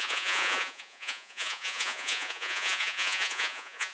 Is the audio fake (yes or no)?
yes